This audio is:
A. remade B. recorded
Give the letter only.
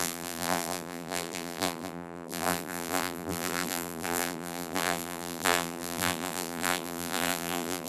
A